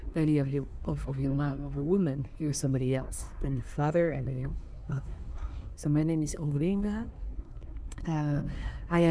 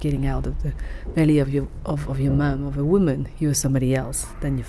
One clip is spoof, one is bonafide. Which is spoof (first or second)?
first